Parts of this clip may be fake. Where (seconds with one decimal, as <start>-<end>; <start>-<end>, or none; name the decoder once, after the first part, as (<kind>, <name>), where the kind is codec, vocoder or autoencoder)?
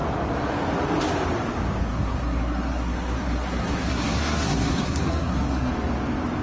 1.9-5.7 (codec, SNAC)